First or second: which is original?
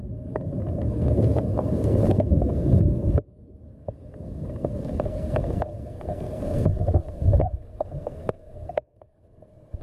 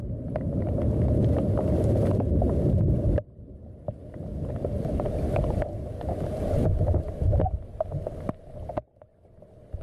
second